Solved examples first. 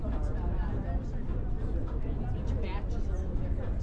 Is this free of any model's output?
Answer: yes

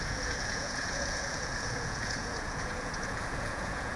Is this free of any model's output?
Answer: no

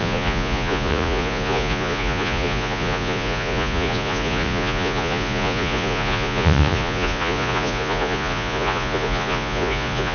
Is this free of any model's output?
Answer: no